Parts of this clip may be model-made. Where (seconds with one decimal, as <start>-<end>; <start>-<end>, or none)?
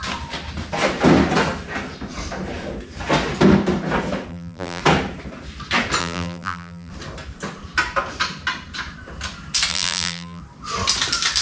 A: 4.3-4.8; 6.0-6.9; 9.7-10.4